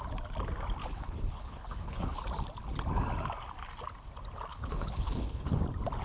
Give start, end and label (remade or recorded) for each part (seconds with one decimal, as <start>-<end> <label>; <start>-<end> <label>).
0.0-0.8 recorded; 0.8-2.2 remade; 2.2-4.5 recorded; 4.5-5.6 remade; 5.6-6.0 recorded